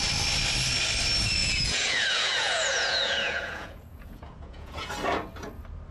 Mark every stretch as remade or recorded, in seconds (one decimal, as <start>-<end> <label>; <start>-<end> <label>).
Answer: 0.0-1.4 recorded; 1.4-4.9 remade; 4.9-5.9 recorded